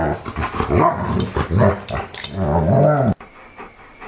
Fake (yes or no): no